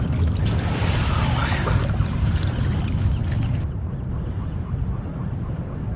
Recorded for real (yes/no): yes